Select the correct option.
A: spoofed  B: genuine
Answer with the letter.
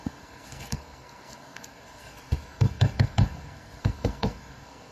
A